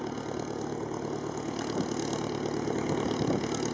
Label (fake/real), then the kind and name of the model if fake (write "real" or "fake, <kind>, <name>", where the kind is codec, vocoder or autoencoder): real